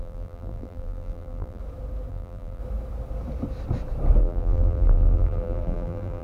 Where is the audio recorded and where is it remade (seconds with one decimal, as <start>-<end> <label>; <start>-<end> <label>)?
0.0-1.6 remade; 1.6-2.1 recorded; 2.1-2.6 remade; 2.6-4.2 recorded; 4.2-6.2 remade